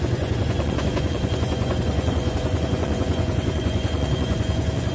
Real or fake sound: fake